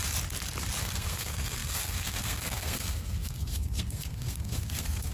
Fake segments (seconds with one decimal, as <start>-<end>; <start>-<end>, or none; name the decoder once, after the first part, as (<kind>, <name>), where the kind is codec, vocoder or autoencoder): 0.8-5.1 (codec, SNAC)